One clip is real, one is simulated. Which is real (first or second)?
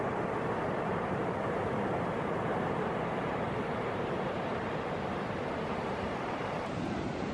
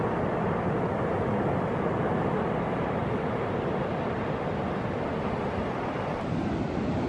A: second